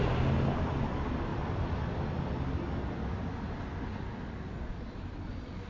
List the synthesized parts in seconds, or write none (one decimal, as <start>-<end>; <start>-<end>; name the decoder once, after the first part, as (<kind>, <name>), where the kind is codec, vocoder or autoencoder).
none